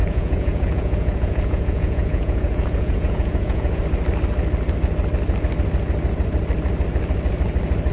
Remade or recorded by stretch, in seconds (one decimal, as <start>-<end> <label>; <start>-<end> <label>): 0.0-3.8 remade; 3.8-7.9 recorded